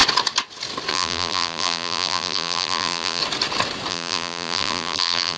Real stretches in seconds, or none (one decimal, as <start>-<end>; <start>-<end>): 0.0-0.9; 3.2-3.9